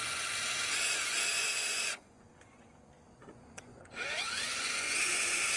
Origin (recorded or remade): remade